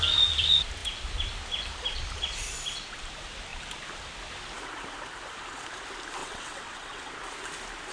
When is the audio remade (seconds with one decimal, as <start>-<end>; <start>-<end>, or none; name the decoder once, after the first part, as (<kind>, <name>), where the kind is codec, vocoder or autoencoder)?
6.2-7.1 (vocoder, WaveNeXt)